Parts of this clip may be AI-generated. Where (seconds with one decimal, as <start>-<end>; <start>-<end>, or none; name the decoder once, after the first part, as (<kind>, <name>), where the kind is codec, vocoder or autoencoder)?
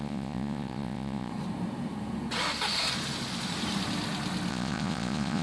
0.0-1.3 (vocoder, Vocos); 4.5-5.4